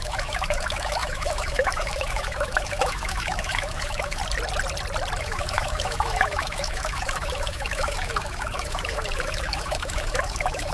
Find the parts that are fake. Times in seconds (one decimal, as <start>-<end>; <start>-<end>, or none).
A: 0.0-4.2; 5.2-10.7